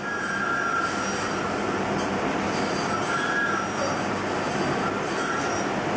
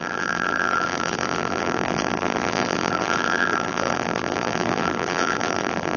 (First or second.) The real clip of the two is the first